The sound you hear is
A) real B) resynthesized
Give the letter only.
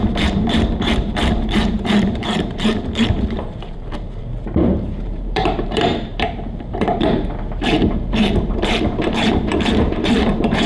B